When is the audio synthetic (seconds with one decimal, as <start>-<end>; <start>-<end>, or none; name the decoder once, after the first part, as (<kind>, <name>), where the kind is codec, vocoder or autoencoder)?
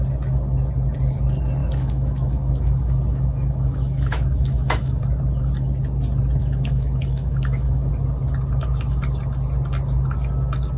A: 1.6-5.0 (autoencoder, DAC-VAE); 6.4-7.9